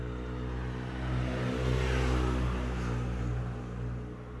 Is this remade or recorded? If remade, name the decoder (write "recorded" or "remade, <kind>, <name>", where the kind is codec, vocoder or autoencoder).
recorded